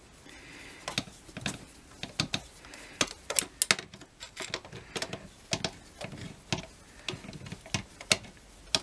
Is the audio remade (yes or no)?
no